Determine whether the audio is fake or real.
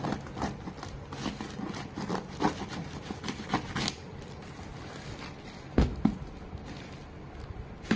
real